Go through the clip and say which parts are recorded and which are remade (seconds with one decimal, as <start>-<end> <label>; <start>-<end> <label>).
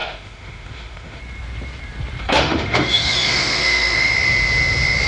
0.0-1.2 remade; 1.2-2.2 recorded; 2.2-4.1 remade; 4.1-5.1 recorded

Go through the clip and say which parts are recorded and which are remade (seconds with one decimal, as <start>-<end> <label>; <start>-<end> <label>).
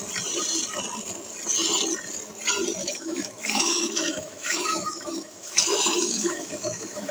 0.0-2.8 recorded; 2.8-7.1 remade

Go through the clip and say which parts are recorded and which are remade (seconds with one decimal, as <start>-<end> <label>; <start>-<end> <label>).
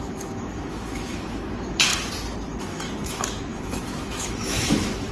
0.0-1.9 remade; 1.9-2.6 recorded; 2.6-5.1 remade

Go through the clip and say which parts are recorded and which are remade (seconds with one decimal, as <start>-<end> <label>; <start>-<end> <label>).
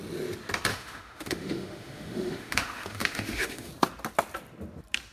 0.0-0.7 recorded; 0.7-3.7 remade; 3.7-5.1 recorded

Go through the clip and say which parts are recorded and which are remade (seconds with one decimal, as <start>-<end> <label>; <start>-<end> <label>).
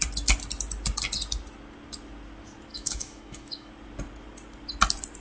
0.0-2.7 recorded; 2.7-3.7 remade; 3.7-5.2 recorded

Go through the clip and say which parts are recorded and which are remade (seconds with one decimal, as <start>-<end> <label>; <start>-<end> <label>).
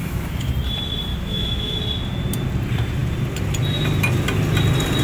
0.0-0.5 remade; 0.5-1.1 recorded; 1.1-1.8 remade; 1.8-5.0 recorded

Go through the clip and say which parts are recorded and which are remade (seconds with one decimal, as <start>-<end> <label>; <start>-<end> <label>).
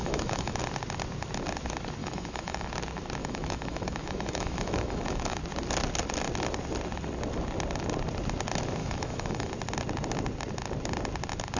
0.0-0.6 remade; 0.6-2.0 recorded; 2.0-2.7 remade; 2.7-3.2 recorded; 3.2-5.4 remade; 5.4-8.8 recorded; 8.8-9.5 remade; 9.5-11.6 recorded